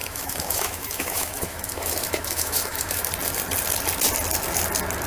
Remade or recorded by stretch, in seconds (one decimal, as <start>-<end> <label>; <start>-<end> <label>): 0.0-3.1 remade; 3.1-5.1 recorded